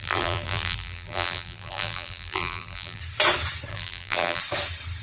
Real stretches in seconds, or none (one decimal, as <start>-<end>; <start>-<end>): 3.0-3.7; 4.4-5.0